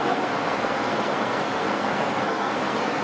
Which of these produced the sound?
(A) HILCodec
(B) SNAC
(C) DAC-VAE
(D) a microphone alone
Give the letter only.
B